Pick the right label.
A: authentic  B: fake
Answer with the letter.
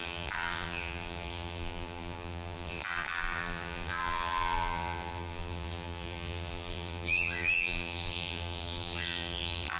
B